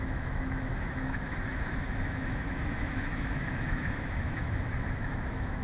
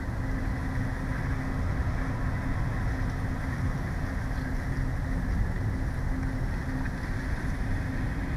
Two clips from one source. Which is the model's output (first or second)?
first